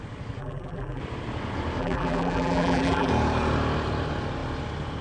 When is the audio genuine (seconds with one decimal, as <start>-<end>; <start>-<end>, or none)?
0.0-0.4; 1.0-1.8; 3.1-5.0